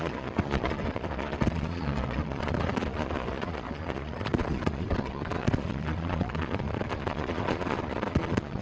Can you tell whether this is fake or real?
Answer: fake